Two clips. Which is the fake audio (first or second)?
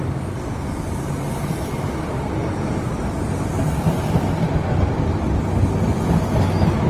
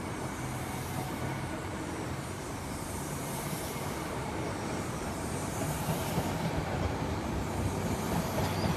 second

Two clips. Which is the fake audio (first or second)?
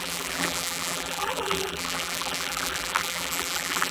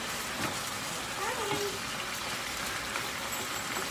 first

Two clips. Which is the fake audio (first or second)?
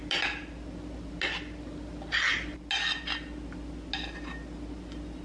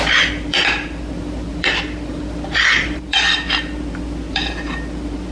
second